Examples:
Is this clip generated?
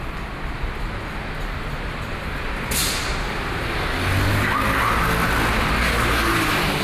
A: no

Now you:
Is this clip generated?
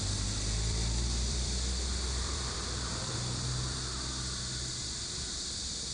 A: yes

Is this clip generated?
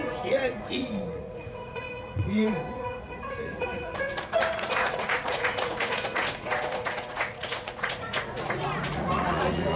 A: yes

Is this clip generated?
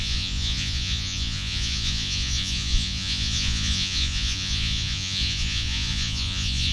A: yes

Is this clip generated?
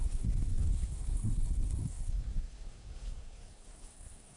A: yes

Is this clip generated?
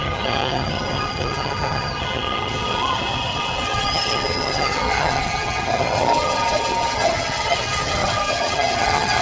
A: yes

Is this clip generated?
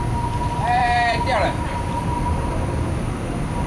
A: yes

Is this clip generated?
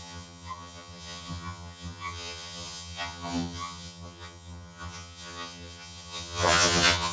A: yes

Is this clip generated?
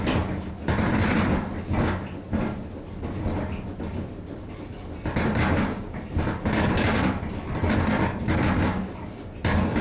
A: no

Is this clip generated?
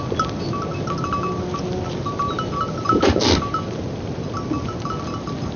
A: no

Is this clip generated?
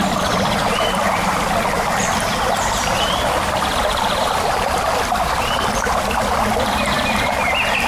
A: no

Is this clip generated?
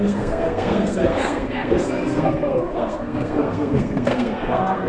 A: yes